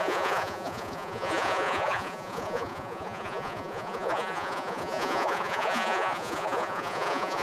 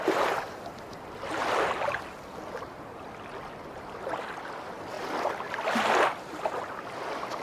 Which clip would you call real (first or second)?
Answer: second